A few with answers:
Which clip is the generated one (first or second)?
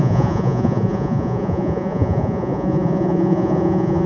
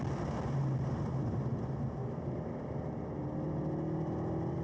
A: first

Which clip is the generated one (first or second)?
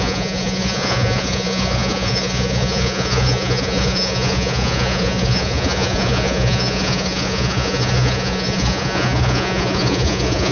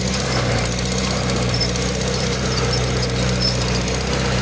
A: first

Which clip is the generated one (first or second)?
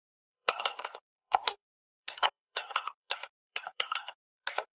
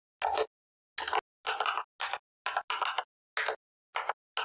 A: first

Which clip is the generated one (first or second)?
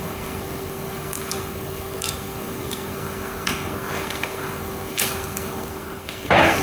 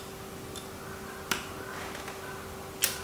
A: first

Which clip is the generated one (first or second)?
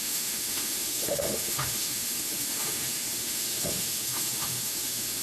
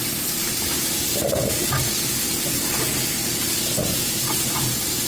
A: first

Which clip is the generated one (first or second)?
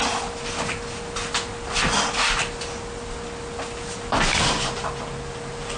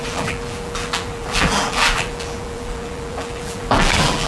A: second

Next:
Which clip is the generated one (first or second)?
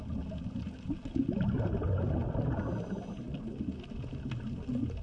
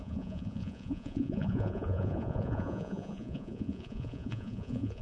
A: second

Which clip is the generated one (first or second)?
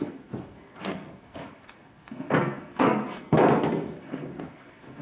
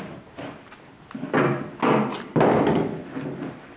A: first